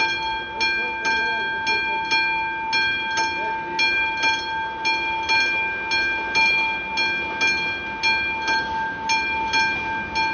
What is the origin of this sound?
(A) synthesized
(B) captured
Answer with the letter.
B